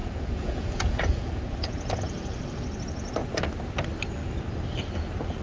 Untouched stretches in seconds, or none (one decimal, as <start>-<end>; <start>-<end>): 2.0-5.4